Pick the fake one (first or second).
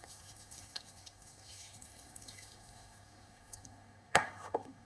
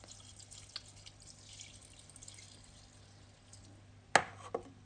first